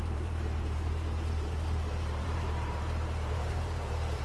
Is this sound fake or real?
fake